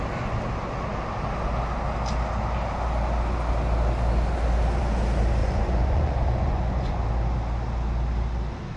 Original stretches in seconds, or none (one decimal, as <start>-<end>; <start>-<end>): 0.0-5.4; 7.0-8.8